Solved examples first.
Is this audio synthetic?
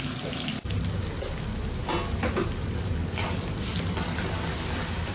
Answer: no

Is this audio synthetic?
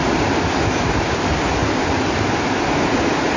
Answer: no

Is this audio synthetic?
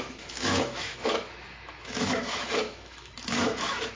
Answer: yes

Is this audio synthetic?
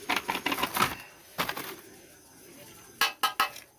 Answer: no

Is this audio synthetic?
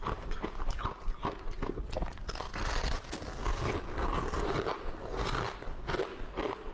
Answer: no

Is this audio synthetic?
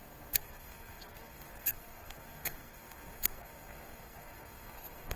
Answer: yes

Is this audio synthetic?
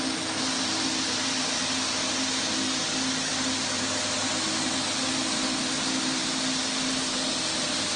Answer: no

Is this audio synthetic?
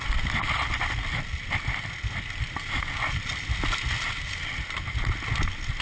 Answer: no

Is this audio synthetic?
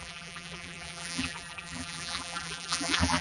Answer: yes